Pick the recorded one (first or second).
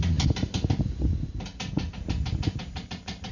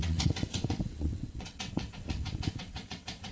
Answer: first